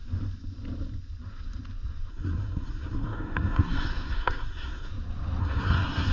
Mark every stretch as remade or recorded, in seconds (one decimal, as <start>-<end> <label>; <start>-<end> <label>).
0.0-2.1 recorded; 2.1-4.9 remade; 4.9-5.4 recorded; 5.4-6.1 remade